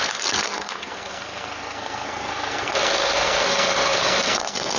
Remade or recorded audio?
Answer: remade